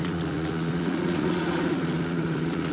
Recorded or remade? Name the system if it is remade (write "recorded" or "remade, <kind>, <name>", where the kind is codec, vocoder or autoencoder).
remade, vocoder, Vocos